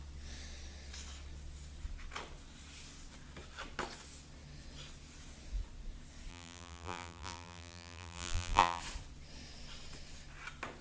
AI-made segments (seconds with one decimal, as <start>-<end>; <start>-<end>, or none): 6.3-8.8